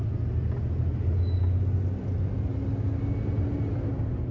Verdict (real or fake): real